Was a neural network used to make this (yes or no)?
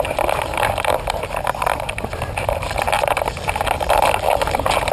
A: yes